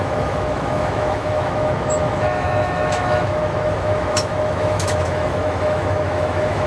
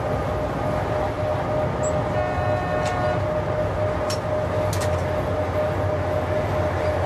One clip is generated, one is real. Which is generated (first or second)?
first